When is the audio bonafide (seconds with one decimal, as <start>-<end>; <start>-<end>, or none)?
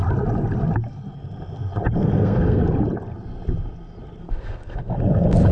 0.0-2.0; 2.6-4.2; 4.9-5.5